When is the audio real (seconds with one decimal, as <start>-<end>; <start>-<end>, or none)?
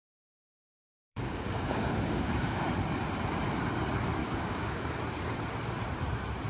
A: 2.6-4.2; 4.9-6.5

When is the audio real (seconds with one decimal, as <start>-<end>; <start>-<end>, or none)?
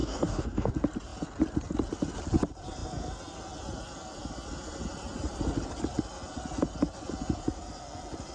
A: 0.7-8.3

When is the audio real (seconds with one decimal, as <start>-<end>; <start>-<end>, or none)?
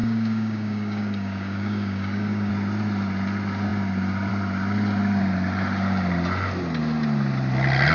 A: 2.5-7.9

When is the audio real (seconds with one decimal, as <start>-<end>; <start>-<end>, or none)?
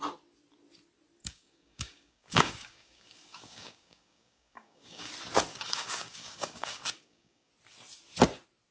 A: 0.0-1.2; 5.1-5.5; 7.5-8.7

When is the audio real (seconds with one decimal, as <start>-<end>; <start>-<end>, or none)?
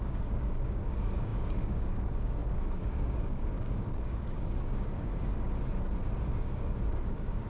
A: 5.1-6.3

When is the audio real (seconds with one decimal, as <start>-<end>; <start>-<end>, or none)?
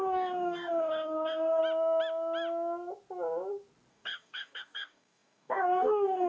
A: 1.6-3.9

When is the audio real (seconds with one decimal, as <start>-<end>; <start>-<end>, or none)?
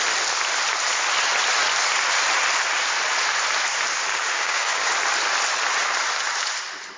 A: 0.0-4.1; 4.9-7.0